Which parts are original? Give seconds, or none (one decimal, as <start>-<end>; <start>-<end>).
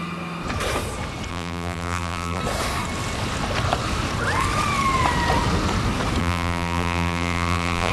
0.0-1.3; 2.4-6.2